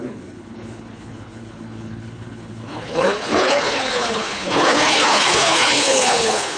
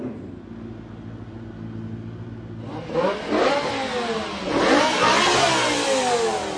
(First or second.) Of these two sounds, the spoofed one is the first